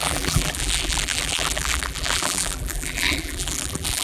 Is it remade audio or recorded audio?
remade